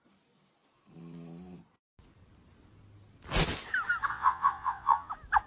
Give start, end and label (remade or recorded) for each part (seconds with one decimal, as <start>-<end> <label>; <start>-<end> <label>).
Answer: 0.0-4.1 recorded; 4.1-5.1 remade; 5.1-5.5 recorded